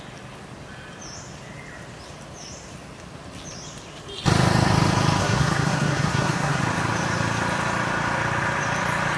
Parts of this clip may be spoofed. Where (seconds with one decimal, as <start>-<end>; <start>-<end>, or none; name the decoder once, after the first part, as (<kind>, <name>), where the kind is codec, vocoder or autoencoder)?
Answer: 5.2-6.6 (codec, SNAC)